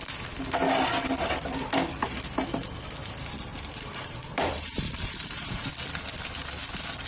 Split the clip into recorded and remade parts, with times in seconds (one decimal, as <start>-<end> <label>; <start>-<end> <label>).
0.0-3.5 recorded; 3.5-5.7 remade; 5.7-7.1 recorded